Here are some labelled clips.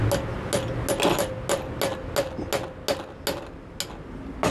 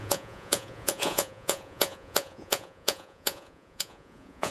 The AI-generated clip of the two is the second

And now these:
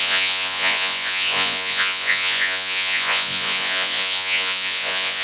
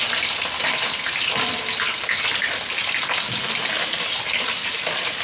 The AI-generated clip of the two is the first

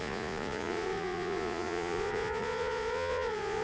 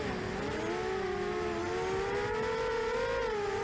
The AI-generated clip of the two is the first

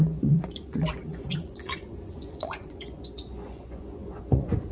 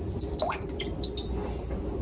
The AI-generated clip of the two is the first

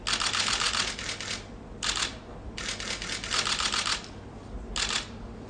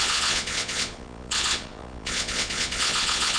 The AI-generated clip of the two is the second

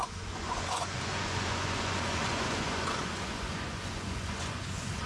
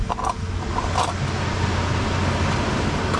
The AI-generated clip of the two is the first